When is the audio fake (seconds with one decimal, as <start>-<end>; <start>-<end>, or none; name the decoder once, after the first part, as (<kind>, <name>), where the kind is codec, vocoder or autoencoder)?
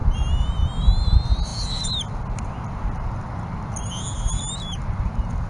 none